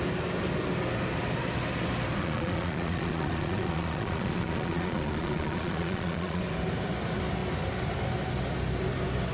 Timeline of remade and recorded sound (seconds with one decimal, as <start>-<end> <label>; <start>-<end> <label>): 0.0-2.2 recorded; 2.2-6.4 remade; 6.4-9.3 recorded

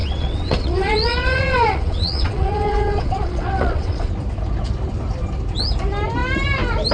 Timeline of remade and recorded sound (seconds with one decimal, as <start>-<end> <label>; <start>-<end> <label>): 0.0-4.1 remade; 4.1-6.9 recorded

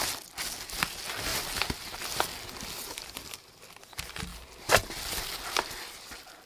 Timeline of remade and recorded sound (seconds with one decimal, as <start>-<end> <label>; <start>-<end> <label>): 0.0-6.5 recorded